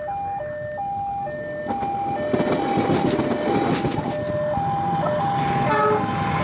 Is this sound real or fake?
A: real